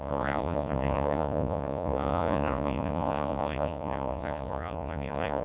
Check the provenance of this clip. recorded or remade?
remade